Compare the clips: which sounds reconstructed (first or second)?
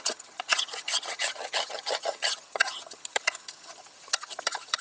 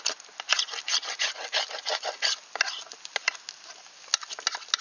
first